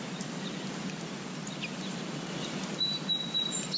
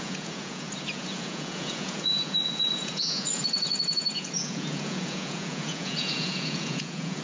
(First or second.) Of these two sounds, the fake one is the second